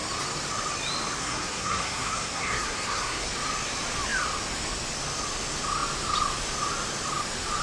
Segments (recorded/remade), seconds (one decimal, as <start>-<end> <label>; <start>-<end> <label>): 0.0-1.2 recorded; 1.2-3.3 remade; 3.3-7.6 recorded